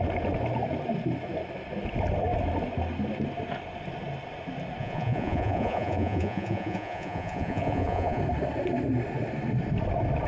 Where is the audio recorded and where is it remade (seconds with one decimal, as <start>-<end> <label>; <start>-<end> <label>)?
0.0-4.8 recorded; 4.8-8.2 remade; 8.2-10.3 recorded